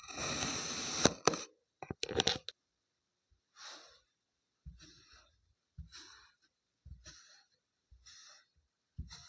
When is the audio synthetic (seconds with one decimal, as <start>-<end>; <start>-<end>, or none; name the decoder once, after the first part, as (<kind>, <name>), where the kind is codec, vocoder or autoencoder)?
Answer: none